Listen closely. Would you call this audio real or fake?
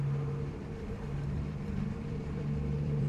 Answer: fake